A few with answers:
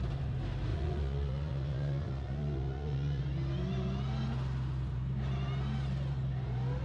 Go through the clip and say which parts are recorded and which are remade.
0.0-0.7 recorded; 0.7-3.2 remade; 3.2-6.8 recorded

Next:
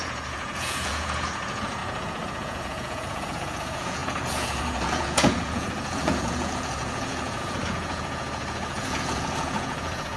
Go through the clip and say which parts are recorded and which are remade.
0.0-10.2 remade

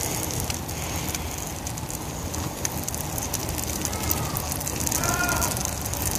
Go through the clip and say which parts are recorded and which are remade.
0.0-6.2 recorded

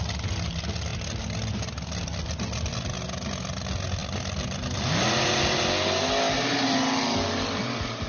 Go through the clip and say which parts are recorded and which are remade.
0.0-8.1 recorded